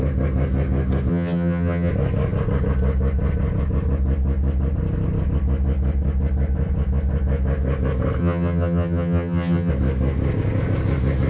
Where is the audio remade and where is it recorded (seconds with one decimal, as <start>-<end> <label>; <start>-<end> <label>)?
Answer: 0.0-1.1 recorded; 1.1-1.9 remade; 1.9-8.2 recorded; 8.2-9.7 remade; 9.7-11.3 recorded

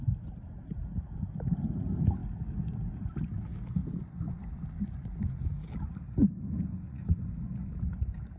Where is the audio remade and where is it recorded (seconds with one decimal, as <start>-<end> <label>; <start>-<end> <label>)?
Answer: 0.0-6.7 recorded; 6.7-7.3 remade; 7.3-8.4 recorded

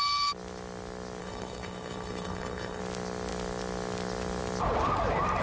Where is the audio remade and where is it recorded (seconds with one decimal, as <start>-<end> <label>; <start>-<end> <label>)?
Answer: 0.0-1.2 recorded; 1.2-2.8 remade; 2.8-5.4 recorded

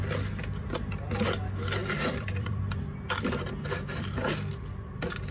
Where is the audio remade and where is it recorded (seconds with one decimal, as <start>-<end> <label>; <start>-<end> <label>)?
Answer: 0.0-1.8 recorded; 1.8-2.8 remade; 2.8-5.3 recorded